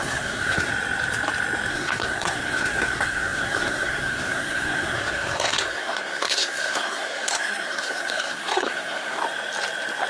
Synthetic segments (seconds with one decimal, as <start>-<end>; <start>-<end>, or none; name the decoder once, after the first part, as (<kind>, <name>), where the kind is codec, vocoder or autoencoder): 0.0-0.7 (codec, SNAC); 1.7-9.2

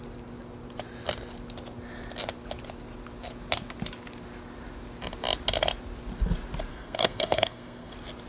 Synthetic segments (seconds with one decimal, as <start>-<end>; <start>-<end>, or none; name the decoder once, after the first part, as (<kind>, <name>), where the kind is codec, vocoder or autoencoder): 6.7-7.9 (codec, SNAC)

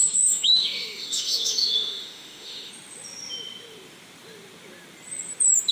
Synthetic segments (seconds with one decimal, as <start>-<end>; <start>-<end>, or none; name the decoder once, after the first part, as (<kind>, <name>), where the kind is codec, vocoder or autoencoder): 0.0-2.7 (autoencoder, DAC-VAE)

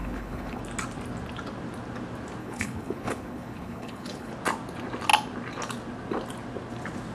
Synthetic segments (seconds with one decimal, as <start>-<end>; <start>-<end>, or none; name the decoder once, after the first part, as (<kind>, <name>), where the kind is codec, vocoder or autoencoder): 0.0-0.6 (codec, HILCodec); 2.4-4.3